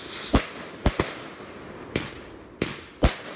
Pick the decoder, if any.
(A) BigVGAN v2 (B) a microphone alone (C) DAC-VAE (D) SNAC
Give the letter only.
B